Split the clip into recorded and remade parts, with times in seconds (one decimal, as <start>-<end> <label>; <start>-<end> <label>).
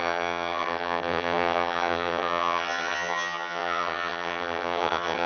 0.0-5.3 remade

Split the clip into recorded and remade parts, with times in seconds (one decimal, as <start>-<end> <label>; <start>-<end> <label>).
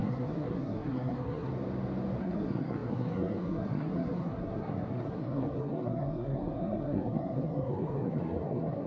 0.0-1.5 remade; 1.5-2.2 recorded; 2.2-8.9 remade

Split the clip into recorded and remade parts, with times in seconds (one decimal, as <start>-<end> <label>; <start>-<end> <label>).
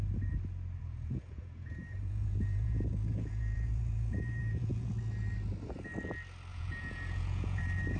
0.0-0.8 recorded; 0.8-4.9 remade; 4.9-6.5 recorded; 6.5-7.6 remade; 7.6-8.0 recorded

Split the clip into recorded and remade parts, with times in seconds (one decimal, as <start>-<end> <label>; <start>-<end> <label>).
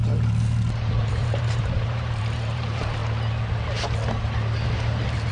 0.0-1.1 recorded; 1.1-3.0 remade; 3.0-5.3 recorded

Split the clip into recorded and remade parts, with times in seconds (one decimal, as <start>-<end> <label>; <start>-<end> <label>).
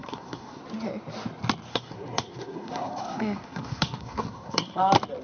0.0-0.6 remade; 0.6-1.7 recorded; 1.7-4.8 remade; 4.8-5.2 recorded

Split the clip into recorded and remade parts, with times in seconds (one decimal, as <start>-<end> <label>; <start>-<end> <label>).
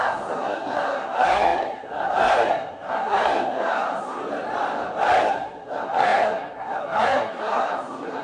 0.0-4.2 remade; 4.2-5.2 recorded; 5.2-8.2 remade